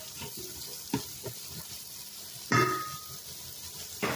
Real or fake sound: fake